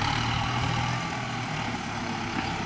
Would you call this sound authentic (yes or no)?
yes